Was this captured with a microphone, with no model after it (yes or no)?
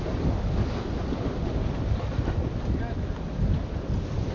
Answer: yes